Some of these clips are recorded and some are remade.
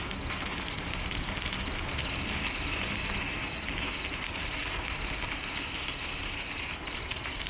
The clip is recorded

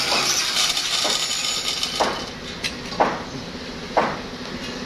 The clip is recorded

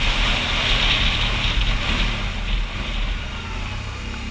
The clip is recorded